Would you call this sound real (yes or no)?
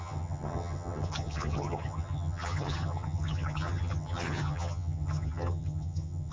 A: no